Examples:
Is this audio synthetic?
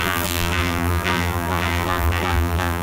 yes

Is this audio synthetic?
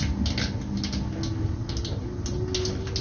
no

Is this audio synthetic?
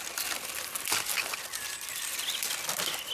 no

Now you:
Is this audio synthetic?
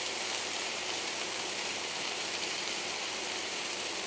yes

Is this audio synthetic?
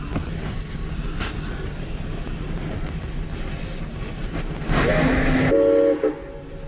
no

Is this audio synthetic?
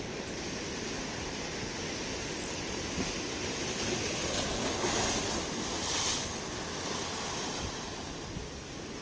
no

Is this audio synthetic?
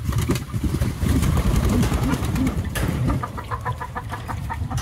yes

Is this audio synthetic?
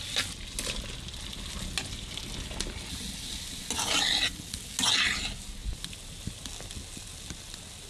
no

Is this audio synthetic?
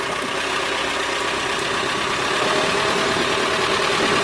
no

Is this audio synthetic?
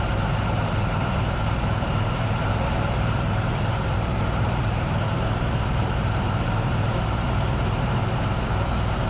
yes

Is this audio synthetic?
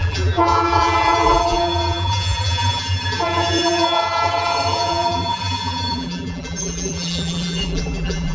yes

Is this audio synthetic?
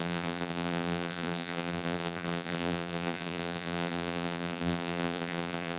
yes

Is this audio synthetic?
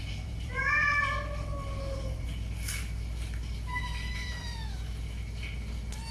yes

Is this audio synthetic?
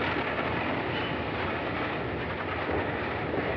no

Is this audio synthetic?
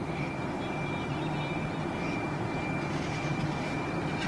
no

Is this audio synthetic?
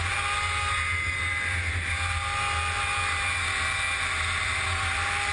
no